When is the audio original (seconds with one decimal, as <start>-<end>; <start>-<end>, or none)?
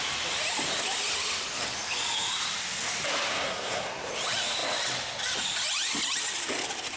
0.0-3.3; 4.1-7.0